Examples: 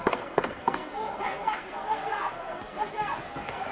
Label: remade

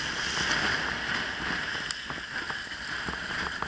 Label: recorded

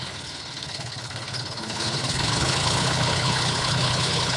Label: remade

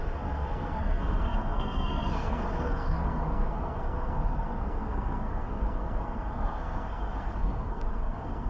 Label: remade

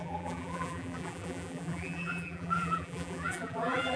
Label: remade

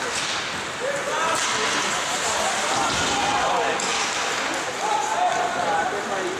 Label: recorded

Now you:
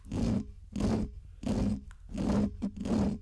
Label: recorded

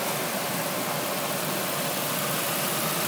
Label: recorded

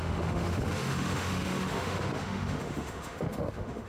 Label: remade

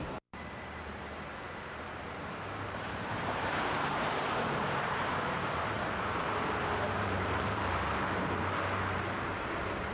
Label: remade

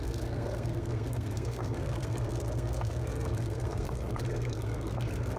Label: remade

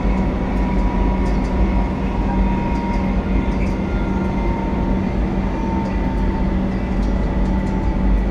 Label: recorded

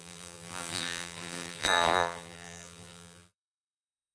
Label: remade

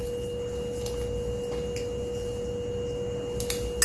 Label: recorded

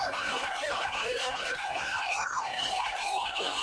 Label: remade